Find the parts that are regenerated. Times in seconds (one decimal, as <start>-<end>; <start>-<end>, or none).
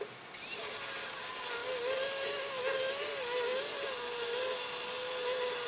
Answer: none